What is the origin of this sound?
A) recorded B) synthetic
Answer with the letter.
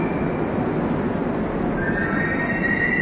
A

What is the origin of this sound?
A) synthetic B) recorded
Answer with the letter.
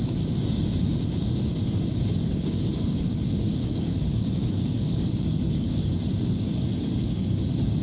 A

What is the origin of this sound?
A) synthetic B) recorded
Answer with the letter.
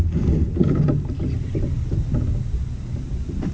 B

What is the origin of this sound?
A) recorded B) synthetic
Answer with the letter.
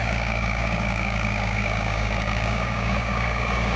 B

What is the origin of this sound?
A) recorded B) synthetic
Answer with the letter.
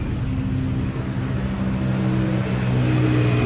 A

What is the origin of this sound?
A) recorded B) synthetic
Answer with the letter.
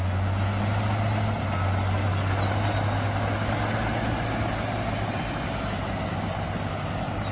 A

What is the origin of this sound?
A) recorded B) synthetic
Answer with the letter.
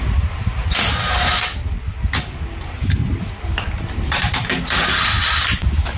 A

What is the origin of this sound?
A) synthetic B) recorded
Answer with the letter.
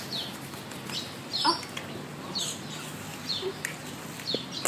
B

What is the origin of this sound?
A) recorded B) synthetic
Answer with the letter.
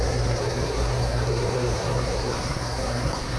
B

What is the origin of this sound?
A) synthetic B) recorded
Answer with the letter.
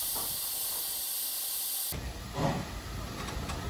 B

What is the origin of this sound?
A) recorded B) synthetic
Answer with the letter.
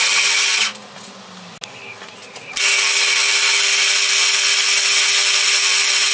A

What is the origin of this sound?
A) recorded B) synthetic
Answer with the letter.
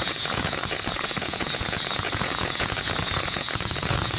B